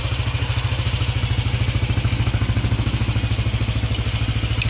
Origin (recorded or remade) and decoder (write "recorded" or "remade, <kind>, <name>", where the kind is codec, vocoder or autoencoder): recorded